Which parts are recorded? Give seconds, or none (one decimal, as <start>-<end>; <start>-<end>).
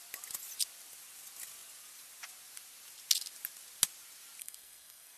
0.0-4.4